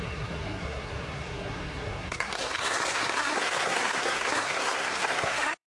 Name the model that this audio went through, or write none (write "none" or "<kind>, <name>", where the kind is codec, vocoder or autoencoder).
codec, SNAC